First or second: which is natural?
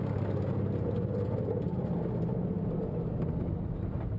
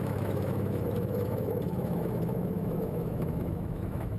first